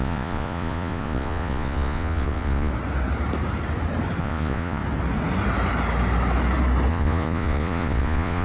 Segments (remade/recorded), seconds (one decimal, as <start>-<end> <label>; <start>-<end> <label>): 0.0-2.7 remade; 2.7-4.2 recorded; 4.2-4.8 remade; 4.8-6.9 recorded; 6.9-8.4 remade